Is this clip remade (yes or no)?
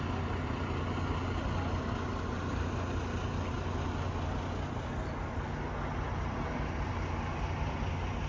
no